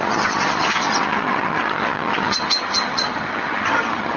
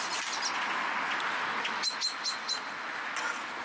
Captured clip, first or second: second